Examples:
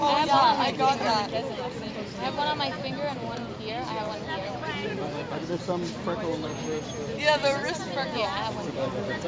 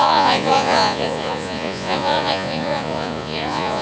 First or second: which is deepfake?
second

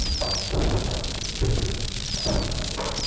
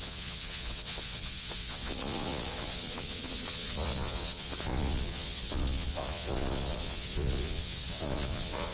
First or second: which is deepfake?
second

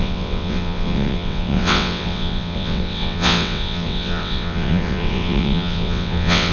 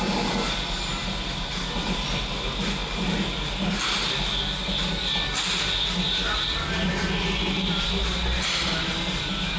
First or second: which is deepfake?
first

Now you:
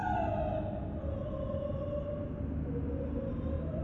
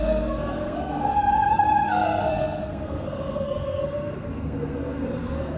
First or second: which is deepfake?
second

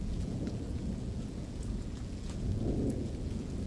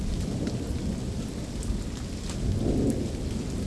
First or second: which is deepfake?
first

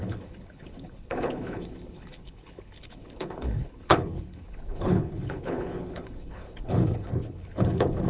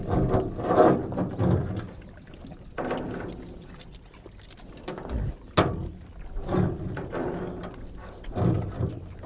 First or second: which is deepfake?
first